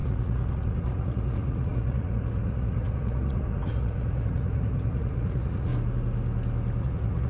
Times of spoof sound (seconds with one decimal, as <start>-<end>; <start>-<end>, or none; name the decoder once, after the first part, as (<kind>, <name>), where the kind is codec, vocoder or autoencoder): 0.0-5.7 (vocoder, Vocos); 6.8-7.3